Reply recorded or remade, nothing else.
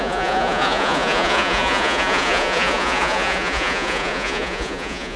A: remade